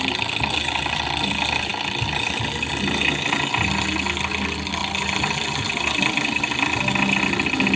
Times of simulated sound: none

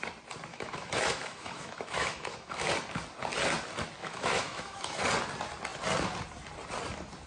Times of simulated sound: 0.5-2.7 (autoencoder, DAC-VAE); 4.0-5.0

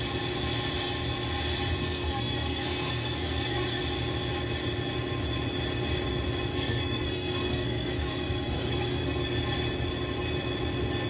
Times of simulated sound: 1.8-3.8 (codec, SNAC); 6.5-9.2

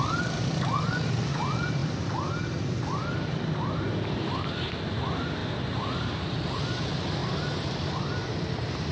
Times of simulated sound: none

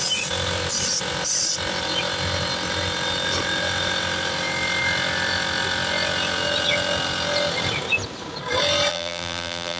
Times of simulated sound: 8.9-9.8 (vocoder, BigVGAN v2)

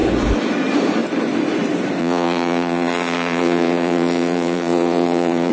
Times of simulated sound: 2.0-5.5 (vocoder, Vocos)